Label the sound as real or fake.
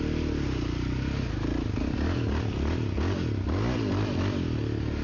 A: real